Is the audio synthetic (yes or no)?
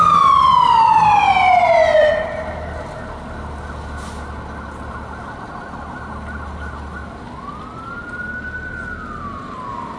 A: no